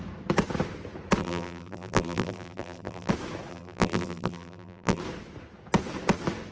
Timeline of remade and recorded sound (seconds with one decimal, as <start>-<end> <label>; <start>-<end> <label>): 0.0-1.2 recorded; 1.2-3.1 remade; 3.1-3.5 recorded; 3.5-5.0 remade; 5.0-6.5 recorded